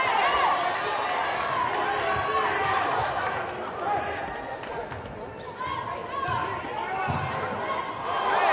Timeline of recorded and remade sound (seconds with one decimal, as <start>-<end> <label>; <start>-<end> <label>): 0.0-8.5 recorded